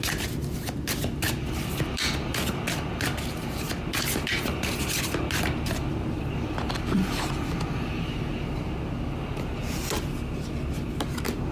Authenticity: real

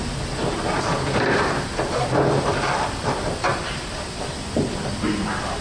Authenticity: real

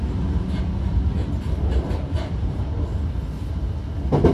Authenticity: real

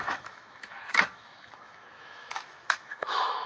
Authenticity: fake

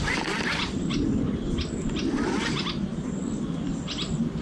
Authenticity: real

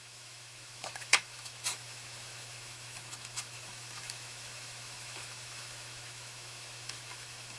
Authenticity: fake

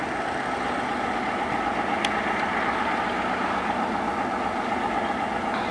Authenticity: real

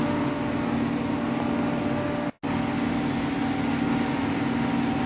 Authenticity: real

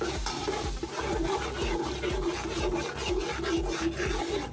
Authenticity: real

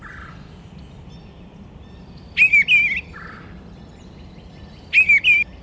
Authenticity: real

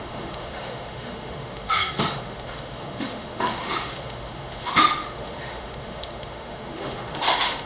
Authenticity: fake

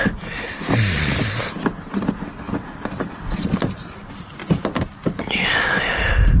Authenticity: real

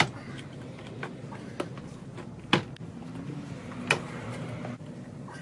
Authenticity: real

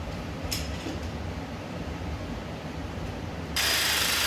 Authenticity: fake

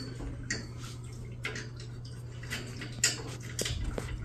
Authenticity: real